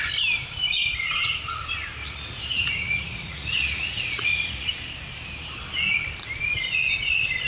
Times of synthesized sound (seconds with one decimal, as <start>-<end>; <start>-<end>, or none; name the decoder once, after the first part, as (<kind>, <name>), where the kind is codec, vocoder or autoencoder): 2.0-4.7 (vocoder, Vocos)